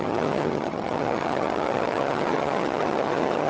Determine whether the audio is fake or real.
fake